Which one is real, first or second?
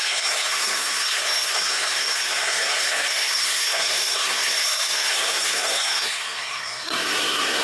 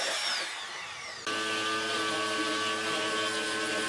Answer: second